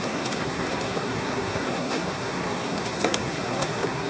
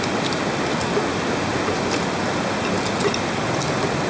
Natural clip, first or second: second